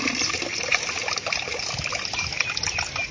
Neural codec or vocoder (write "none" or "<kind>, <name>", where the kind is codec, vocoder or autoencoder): none